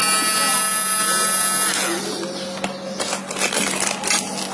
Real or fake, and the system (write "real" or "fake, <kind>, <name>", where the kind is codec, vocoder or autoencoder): real